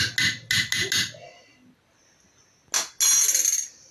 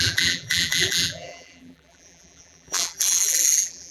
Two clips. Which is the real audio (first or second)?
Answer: first